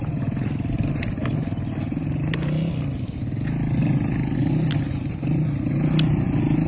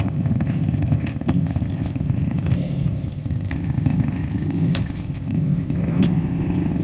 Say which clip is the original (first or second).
first